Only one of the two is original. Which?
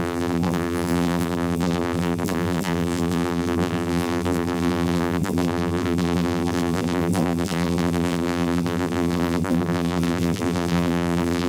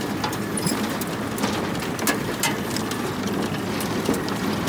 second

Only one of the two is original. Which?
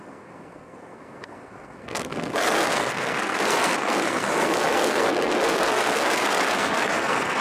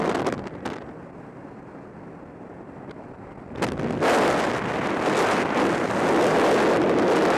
second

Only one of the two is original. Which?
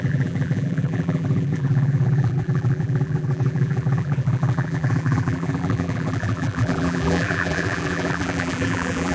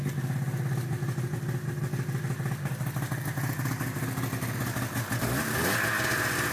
second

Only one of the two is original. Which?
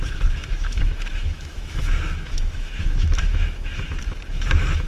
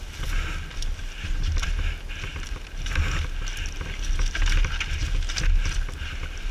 second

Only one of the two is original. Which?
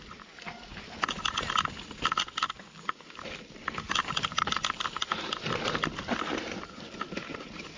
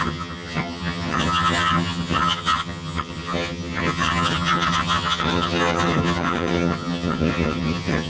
first